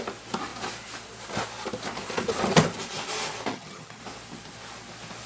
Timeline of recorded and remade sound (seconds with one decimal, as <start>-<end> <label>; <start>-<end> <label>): 0.0-3.5 recorded; 3.5-4.0 remade; 4.0-5.3 recorded